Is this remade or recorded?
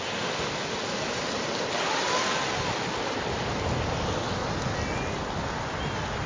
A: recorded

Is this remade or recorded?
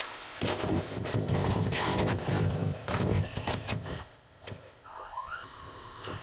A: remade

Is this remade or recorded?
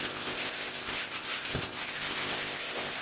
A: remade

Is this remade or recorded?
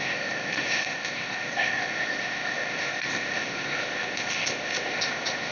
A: remade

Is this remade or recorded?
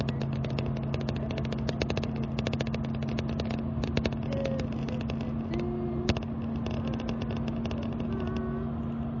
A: recorded